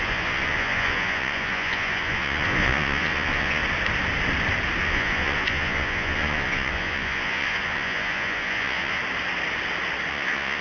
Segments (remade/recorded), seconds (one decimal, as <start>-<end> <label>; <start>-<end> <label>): 0.0-3.6 remade; 3.6-4.8 recorded; 4.8-9.0 remade; 9.0-10.1 recorded; 10.1-10.6 remade